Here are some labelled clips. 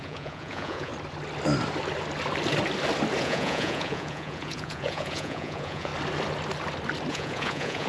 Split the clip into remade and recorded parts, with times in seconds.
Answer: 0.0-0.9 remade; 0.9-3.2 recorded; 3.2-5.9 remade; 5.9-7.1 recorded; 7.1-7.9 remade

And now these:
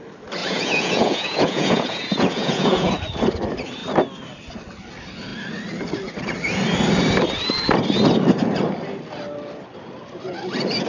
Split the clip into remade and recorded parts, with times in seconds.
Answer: 0.0-0.4 recorded; 0.4-2.9 remade; 2.9-10.9 recorded